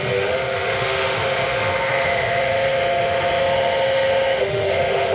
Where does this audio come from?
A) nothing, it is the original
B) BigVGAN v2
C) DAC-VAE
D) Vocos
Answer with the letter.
C